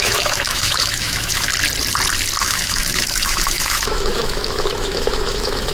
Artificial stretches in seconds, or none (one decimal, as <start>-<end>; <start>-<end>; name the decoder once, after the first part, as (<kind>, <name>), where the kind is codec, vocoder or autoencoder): 0.0-1.5 (autoencoder, DAC-VAE); 2.4-5.7